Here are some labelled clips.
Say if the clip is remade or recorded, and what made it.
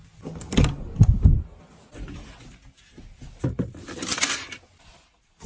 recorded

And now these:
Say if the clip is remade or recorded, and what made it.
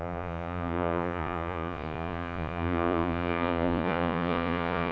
remade, vocoder, Vocos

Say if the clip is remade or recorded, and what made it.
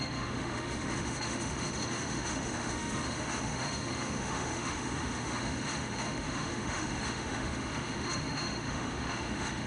remade, autoencoder, DAC-VAE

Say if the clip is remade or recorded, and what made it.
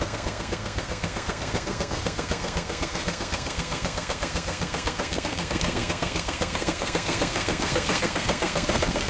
remade, codec, SNAC